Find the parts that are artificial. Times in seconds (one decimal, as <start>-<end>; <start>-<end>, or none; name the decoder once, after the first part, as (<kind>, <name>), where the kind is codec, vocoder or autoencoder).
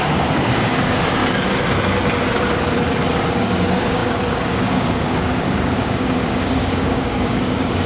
0.0-1.2 (codec, DAC); 3.3-7.9